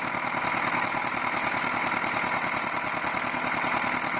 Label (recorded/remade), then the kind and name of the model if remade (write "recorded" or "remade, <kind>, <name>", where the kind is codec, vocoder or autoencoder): recorded